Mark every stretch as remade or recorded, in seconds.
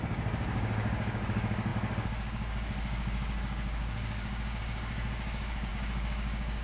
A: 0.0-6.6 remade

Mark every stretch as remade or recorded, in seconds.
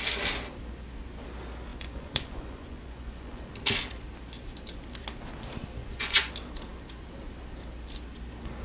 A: 0.0-1.7 recorded; 1.7-3.5 remade; 3.5-5.8 recorded; 5.8-6.3 remade; 6.3-8.6 recorded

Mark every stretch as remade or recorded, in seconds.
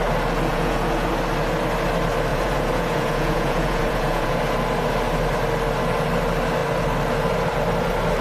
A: 0.0-0.5 recorded; 0.5-1.1 remade; 1.1-2.3 recorded; 2.3-4.4 remade; 4.4-8.2 recorded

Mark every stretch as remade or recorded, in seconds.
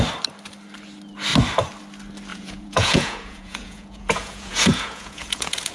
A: 0.0-2.3 recorded; 2.3-5.7 remade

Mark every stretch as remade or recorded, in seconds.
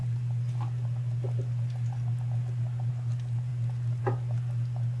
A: 0.0-5.0 recorded